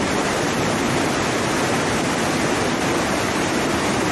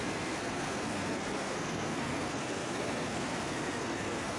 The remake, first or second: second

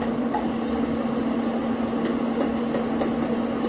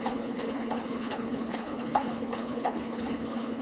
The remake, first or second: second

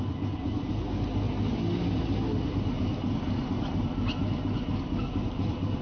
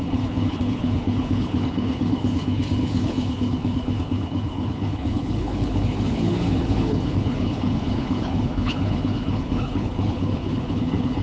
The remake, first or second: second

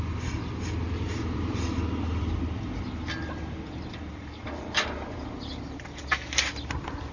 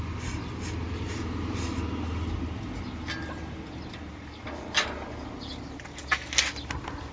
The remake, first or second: first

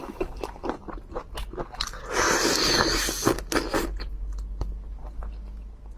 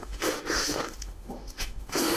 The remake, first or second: second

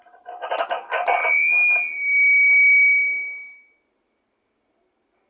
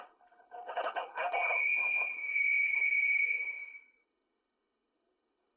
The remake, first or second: second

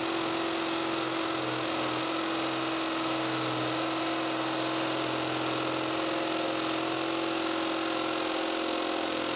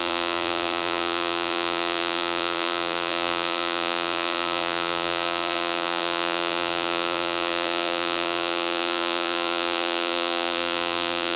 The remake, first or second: second